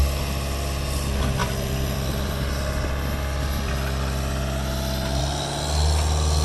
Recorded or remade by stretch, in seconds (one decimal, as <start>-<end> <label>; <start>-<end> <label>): 0.0-1.4 recorded; 1.4-5.2 remade; 5.2-6.4 recorded